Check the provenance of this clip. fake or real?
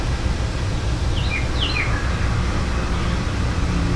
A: real